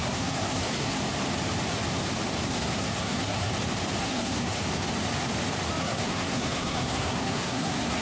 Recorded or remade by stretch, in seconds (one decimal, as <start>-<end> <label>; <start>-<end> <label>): 0.0-1.0 remade; 1.0-2.5 recorded; 2.5-3.5 remade; 3.5-4.0 recorded; 4.0-4.6 remade; 4.6-5.8 recorded; 5.8-8.0 remade